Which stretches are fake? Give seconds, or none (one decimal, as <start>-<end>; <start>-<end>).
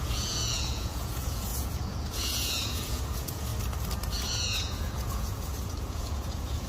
0.0-3.5; 4.3-6.7